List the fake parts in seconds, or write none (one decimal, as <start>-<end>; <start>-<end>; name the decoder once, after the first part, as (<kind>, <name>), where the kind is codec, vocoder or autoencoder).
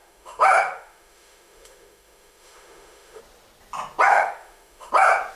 0.0-3.2 (autoencoder, DAC-VAE); 4.1-4.9